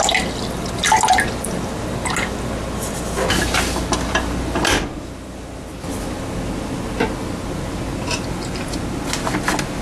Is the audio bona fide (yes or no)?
yes